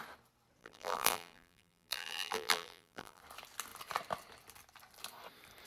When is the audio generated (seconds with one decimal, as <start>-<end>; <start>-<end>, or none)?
0.6-3.2